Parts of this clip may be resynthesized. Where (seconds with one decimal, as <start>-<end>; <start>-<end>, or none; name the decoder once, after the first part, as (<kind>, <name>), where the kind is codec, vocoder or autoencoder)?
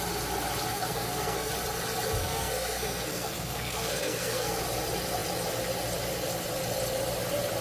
0.7-1.5 (codec, SNAC); 2.2-4.6